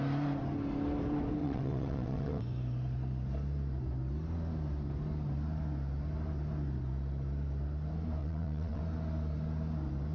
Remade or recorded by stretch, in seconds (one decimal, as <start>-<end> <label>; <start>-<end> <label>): 0.0-1.4 recorded; 1.4-2.4 remade; 2.4-8.2 recorded; 8.2-8.8 remade; 8.8-10.1 recorded